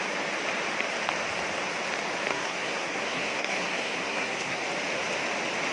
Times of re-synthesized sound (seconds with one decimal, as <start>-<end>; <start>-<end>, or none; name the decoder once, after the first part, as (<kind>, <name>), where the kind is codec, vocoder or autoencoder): 2.3-4.6 (codec, SNAC)